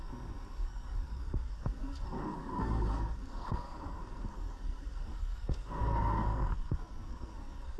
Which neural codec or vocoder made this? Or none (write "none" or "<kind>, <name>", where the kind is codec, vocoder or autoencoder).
codec, SNAC